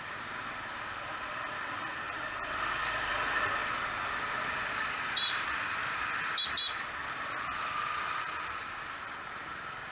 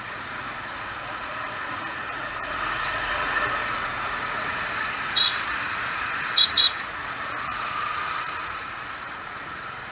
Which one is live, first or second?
first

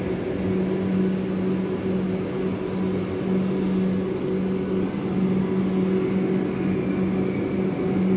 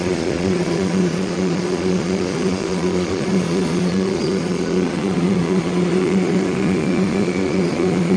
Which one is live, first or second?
first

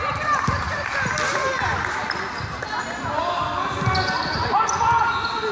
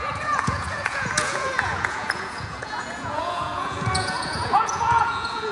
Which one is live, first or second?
first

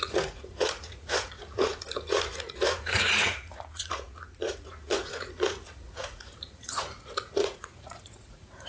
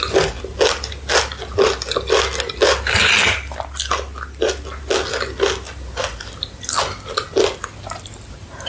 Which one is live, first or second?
second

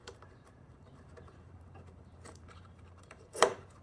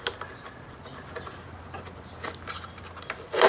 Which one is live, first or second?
second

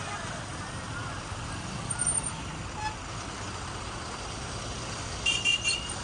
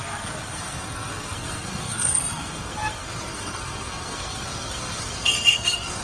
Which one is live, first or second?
first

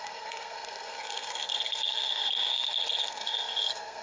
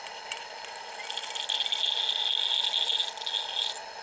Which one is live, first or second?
second